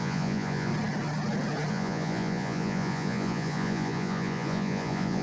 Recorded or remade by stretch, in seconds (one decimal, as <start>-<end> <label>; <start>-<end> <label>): 0.0-0.7 remade; 0.7-1.7 recorded; 1.7-5.2 remade